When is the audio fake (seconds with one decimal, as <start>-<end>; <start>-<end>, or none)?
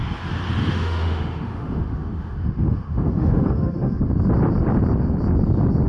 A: 0.6-4.1